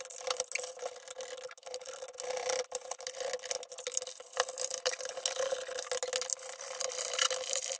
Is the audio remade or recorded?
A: recorded